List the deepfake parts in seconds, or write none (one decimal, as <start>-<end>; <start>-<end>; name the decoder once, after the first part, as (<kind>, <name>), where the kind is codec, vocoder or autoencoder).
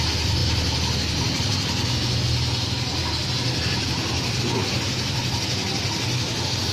none